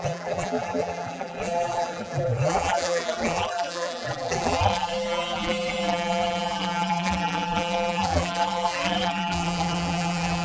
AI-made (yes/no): yes